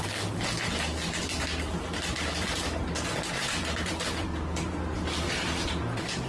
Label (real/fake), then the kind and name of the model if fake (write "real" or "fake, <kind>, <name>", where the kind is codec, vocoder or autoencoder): fake, vocoder, BigVGAN v2